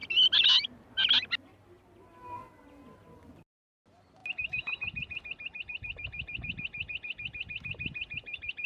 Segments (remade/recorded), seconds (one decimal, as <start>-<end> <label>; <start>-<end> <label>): 0.0-8.7 recorded